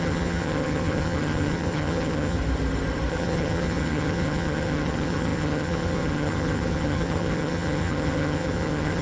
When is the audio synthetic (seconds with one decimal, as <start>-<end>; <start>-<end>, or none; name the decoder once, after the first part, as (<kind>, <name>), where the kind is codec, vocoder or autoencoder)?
0.0-2.4 (vocoder, HiFi-GAN); 3.1-9.0